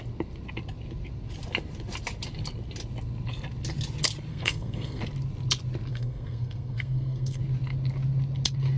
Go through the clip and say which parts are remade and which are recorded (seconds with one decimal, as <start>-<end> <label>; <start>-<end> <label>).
0.0-4.3 recorded; 4.3-5.0 remade; 5.0-5.9 recorded; 5.9-7.4 remade; 7.4-8.8 recorded